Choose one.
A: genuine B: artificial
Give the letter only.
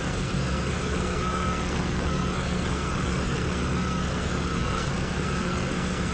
B